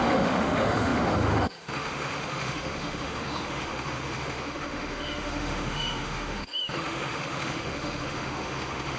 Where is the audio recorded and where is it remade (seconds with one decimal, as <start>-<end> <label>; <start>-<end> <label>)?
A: 0.0-9.0 remade